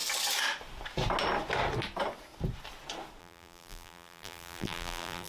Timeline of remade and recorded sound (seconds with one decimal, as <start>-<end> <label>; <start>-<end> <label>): 0.0-3.2 recorded; 3.2-5.3 remade